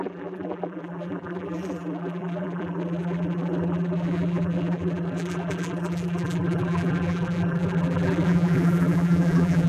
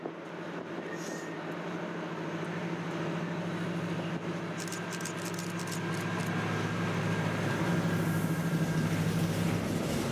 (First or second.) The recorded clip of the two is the second